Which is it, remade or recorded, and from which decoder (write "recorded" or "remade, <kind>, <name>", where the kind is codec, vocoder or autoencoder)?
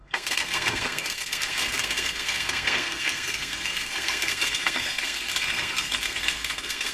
remade, codec, SNAC